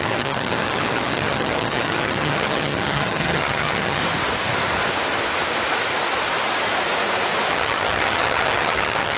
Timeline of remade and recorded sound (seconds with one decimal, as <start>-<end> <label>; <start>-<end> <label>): 0.0-4.0 remade; 4.0-7.5 recorded; 7.5-9.2 remade